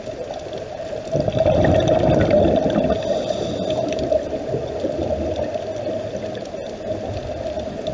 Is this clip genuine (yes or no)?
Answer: yes